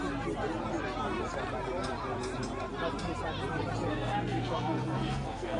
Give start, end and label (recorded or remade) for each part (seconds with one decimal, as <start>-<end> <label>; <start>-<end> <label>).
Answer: 0.0-3.9 recorded; 3.9-5.6 remade